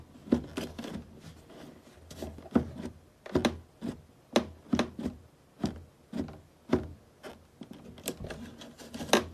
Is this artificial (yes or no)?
no